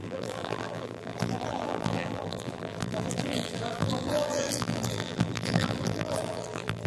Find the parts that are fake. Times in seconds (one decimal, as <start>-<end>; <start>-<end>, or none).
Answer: 0.0-6.9